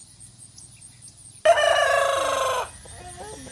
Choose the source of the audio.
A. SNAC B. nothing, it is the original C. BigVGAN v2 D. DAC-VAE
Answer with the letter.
B